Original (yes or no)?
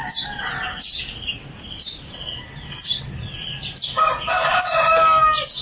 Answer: yes